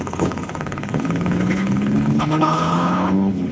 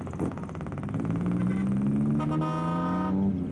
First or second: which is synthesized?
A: first